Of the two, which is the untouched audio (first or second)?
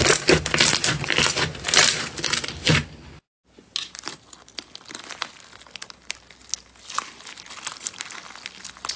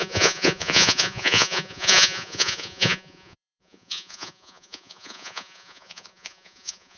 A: first